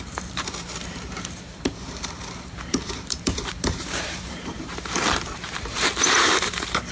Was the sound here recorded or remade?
remade